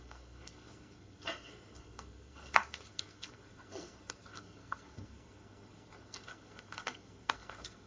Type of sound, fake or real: fake